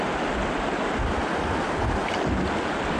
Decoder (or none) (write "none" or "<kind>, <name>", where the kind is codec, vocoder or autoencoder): none